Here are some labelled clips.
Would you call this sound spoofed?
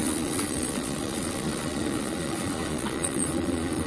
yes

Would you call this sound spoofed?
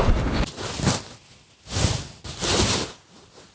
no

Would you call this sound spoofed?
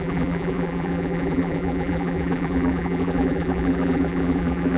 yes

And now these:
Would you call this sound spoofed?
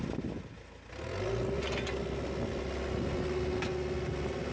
no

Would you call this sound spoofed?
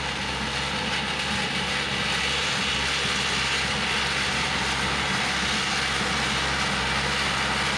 no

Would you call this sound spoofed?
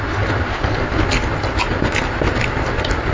no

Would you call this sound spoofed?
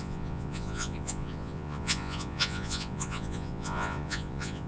yes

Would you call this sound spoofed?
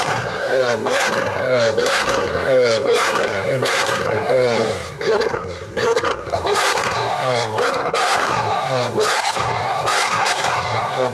yes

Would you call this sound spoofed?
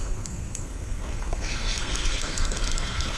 yes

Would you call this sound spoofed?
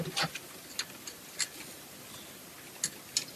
no